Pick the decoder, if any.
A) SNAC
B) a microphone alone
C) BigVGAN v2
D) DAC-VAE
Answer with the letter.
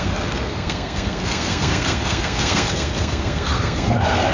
A